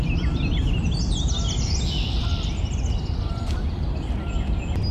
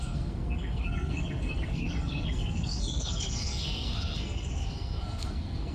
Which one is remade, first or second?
second